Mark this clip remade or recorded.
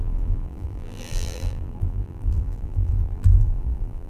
remade